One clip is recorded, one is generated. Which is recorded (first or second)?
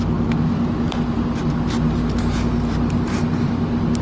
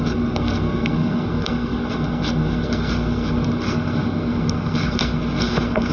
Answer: first